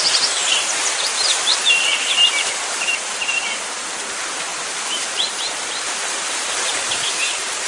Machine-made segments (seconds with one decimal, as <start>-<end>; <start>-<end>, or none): 0.4-1.7; 4.5-7.7